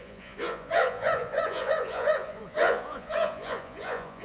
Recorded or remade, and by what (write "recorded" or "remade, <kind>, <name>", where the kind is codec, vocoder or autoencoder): remade, vocoder, Vocos